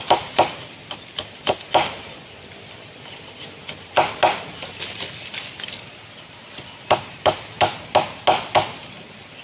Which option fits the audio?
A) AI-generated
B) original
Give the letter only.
B